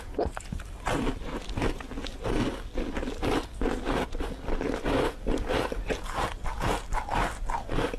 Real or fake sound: real